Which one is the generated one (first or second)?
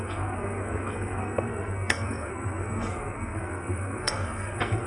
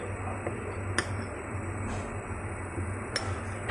first